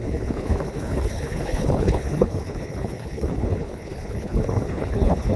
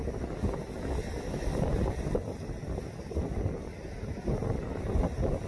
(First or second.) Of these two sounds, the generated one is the first